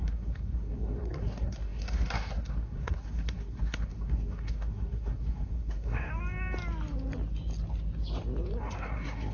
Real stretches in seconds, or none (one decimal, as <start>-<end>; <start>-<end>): 6.1-8.6